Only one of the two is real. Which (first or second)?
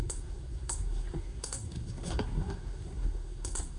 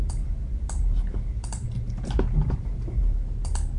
second